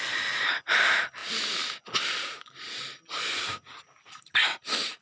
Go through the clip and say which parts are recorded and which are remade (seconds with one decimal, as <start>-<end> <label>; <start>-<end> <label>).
0.0-5.0 recorded